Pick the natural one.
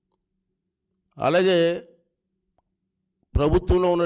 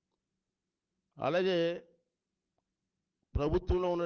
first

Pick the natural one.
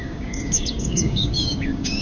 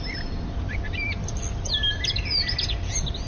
second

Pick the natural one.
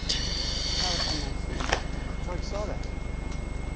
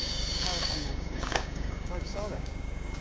first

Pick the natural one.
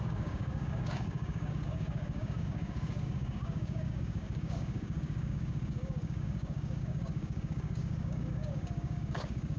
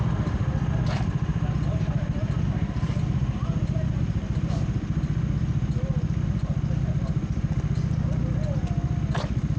second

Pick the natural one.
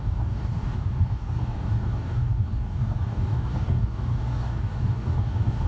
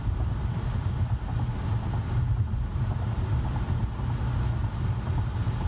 second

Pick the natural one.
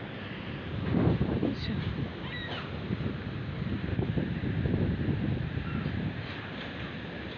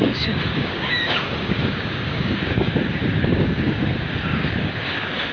first